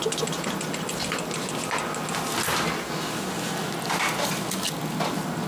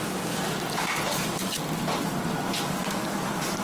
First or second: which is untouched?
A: first